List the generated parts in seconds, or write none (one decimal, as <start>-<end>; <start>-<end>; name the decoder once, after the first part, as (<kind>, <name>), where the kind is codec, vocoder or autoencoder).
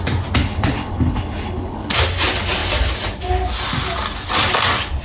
0.4-1.9 (codec, HILCodec)